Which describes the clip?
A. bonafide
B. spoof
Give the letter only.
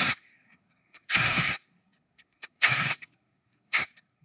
B